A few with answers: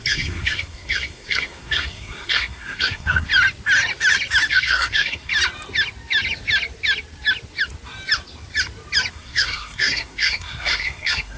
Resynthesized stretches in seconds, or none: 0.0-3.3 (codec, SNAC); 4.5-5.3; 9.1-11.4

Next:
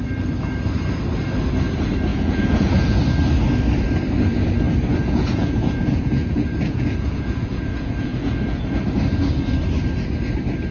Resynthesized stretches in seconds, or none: 2.1-3.0 (vocoder, Vocos); 5.0-8.8

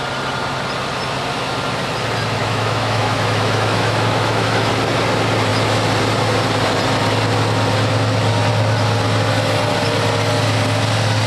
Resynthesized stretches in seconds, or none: 2.4-4.7 (autoencoder, DAC-VAE)

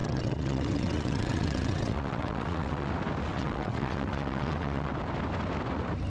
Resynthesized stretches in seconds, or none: 0.0-2.9 (vocoder, WaveNeXt); 3.3-4.9

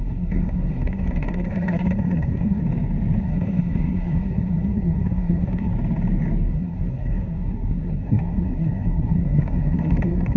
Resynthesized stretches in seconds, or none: 0.0-2.6 (codec, SNAC); 3.2-5.7; 6.5-10.4

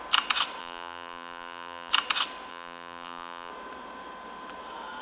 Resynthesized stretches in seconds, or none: 0.6-1.9 (vocoder, BigVGAN v2); 2.5-3.5

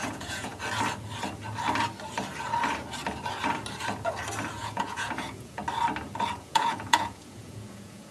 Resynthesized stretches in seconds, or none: 0.0-0.5 (vocoder, Vocos); 4.5-5.6; 6.4-8.1